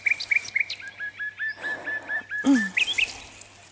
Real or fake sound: real